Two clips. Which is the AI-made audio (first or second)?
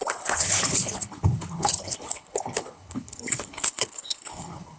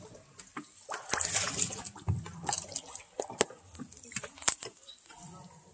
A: first